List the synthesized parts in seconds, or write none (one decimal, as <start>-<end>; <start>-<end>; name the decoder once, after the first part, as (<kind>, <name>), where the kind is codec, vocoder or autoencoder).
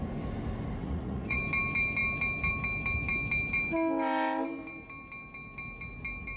0.8-1.4 (vocoder, Vocos)